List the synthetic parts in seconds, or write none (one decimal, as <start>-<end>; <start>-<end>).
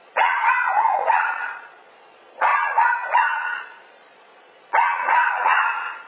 0.0-6.1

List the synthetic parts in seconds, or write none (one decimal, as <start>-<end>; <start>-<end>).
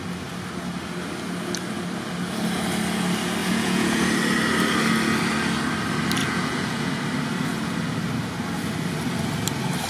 3.4-4.1; 6.2-6.9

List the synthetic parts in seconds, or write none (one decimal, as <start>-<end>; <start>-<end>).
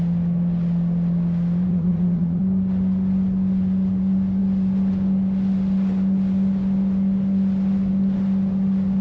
1.7-2.4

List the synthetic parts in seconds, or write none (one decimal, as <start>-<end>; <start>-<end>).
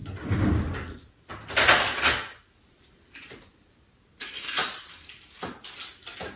none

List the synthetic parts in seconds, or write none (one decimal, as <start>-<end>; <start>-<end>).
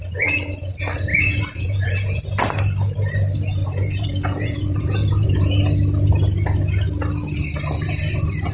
1.1-2.2; 3.6-5.6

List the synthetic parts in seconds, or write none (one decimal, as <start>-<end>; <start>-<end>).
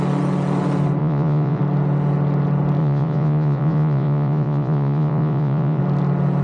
1.0-1.6; 2.8-5.8